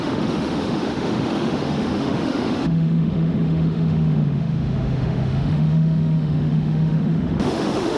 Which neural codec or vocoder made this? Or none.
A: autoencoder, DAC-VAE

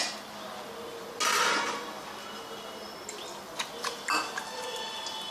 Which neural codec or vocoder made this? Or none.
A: none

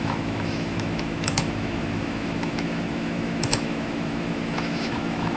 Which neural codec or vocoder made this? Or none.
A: autoencoder, DAC-VAE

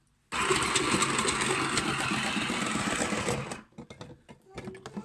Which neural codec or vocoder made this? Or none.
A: none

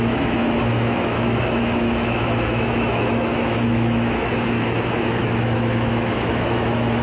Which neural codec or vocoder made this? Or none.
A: autoencoder, DAC-VAE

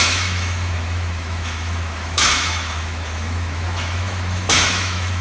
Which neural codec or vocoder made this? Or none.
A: autoencoder, DAC-VAE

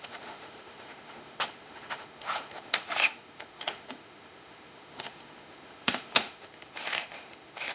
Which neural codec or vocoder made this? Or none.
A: autoencoder, DAC-VAE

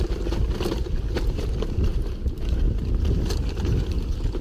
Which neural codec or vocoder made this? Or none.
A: none